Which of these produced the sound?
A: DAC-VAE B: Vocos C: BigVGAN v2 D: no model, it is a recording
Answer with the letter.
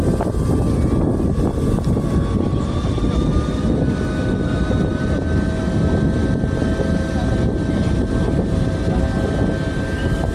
D